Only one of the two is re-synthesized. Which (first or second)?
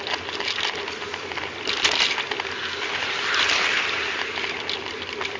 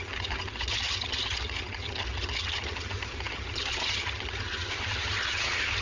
second